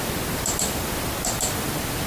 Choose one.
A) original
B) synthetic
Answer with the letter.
A